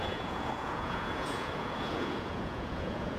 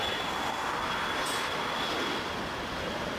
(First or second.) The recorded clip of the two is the second